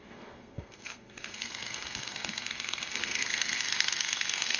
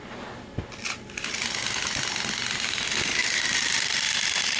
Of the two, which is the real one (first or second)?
second